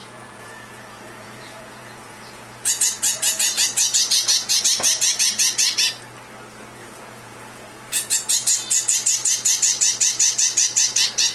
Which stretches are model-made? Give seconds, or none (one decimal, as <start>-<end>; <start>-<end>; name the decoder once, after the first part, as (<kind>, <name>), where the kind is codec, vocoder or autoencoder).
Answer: 0.0-4.6 (vocoder, Vocos); 6.8-8.1

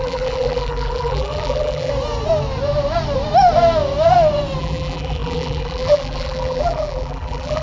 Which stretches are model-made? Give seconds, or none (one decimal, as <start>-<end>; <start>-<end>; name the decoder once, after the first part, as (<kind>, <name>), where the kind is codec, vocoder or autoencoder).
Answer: 0.0-1.9 (vocoder, BigVGAN v2); 4.6-7.6